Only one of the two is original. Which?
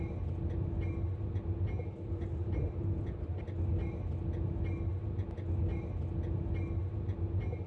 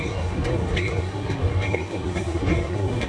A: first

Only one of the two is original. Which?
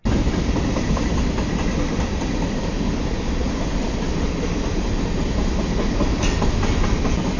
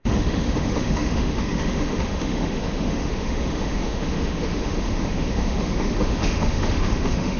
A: first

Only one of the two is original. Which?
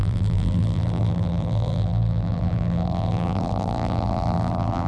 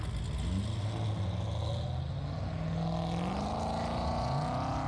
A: second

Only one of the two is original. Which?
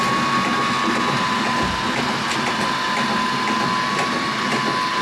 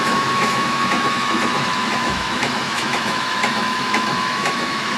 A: first